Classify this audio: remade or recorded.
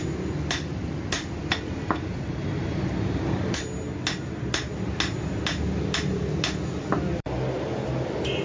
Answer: recorded